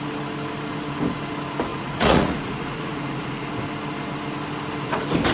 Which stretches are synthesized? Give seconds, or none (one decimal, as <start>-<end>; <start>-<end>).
1.7-3.5